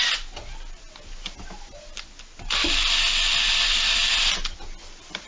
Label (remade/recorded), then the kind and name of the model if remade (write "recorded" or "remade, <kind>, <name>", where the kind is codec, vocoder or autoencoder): recorded